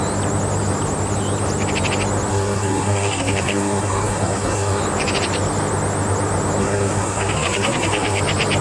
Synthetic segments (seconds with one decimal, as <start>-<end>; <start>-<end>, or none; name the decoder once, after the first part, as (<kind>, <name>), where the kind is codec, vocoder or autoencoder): 2.3-4.8 (codec, SNAC); 6.6-8.2